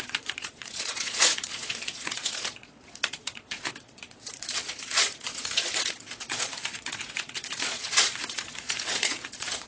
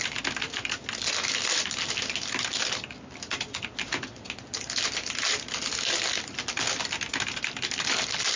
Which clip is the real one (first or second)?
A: second